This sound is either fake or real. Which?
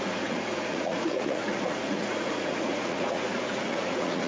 fake